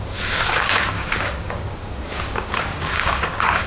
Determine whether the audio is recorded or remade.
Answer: remade